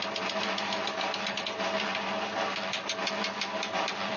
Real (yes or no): yes